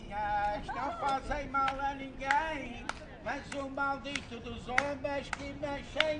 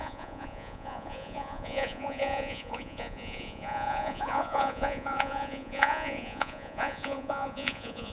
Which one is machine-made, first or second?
second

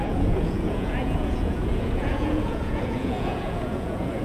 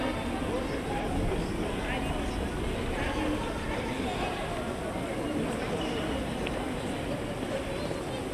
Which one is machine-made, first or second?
first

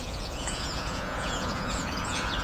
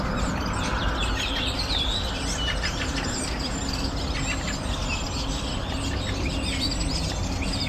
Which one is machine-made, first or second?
first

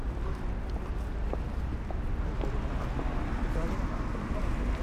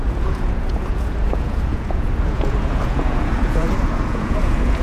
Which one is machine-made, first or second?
second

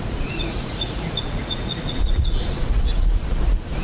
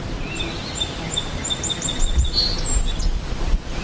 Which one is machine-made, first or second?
first